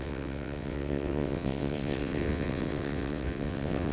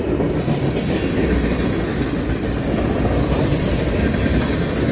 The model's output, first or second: first